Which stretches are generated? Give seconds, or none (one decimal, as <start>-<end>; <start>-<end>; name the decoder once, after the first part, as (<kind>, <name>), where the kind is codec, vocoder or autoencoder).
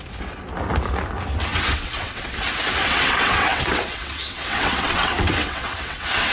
1.5-2.4 (vocoder, WaveNeXt); 2.8-6.3